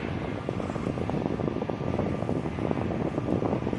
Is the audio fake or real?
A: real